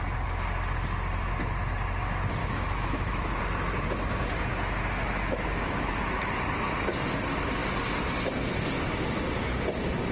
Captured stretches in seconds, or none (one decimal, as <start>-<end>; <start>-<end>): 0.0-2.4; 3.4-4.5; 6.4-10.1